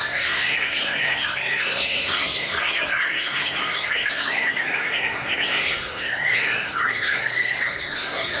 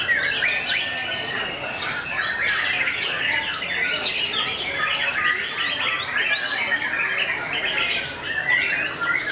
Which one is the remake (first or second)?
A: first